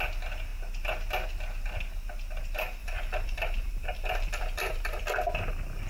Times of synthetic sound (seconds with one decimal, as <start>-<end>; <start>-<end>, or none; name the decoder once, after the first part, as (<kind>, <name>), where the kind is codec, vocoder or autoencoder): 2.8-5.0 (vocoder, BigVGAN v2)

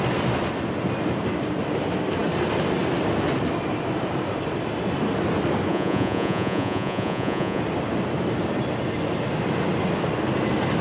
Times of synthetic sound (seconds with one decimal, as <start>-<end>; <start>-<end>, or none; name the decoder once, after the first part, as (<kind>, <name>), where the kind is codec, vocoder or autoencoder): 5.7-7.6 (vocoder, Vocos)

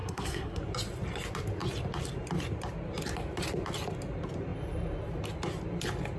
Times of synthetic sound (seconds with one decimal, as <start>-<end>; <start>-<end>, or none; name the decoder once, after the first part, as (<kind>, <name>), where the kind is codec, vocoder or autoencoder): 0.0-0.6 (codec, SNAC)

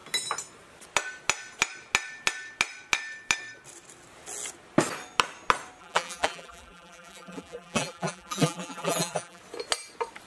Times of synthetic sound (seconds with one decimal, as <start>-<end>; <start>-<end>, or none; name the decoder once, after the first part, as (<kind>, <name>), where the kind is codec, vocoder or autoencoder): 5.8-9.4 (vocoder, BigVGAN v2)

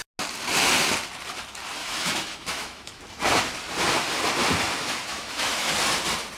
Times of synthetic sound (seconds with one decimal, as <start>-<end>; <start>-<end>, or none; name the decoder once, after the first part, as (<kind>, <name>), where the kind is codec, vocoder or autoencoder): 1.8-3.0 (autoencoder, DAC-VAE); 5.1-5.7

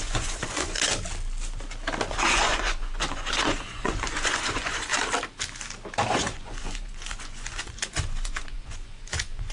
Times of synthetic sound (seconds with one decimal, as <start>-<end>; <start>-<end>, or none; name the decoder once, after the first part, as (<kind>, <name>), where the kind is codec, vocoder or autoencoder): 0.0-0.9 (vocoder, Vocos); 2.1-4.9; 6.1-9.5